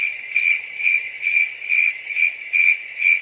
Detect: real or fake fake